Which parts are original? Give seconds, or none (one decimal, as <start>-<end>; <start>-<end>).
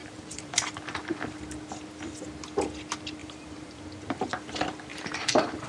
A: 0.5-3.2; 3.8-4.9